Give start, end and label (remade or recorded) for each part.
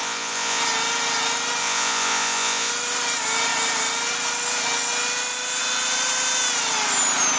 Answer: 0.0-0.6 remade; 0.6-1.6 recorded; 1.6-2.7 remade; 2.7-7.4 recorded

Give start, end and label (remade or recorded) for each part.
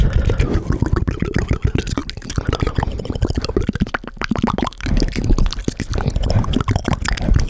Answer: 0.0-7.5 recorded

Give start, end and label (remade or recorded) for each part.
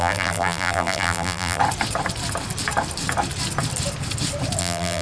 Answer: 0.0-1.6 remade; 1.6-4.6 recorded; 4.6-5.0 remade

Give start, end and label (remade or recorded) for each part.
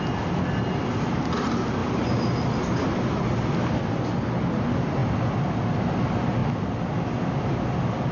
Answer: 0.0-8.1 recorded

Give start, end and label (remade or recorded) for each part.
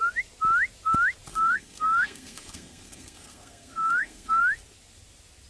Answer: 0.0-1.3 recorded; 1.3-4.4 remade; 4.4-5.5 recorded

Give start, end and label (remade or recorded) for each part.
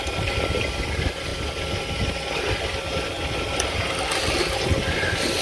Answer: 0.0-5.4 recorded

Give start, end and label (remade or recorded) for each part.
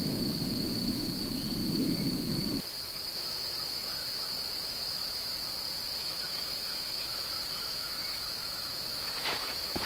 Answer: 0.0-5.3 remade; 5.3-5.9 recorded; 5.9-9.9 remade